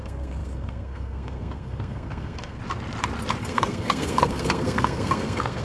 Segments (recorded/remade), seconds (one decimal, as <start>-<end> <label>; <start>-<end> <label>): 0.0-2.6 remade; 2.6-3.4 recorded; 3.4-5.6 remade